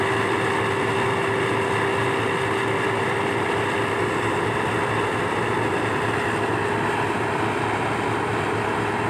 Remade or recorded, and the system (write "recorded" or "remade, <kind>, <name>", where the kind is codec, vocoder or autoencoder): recorded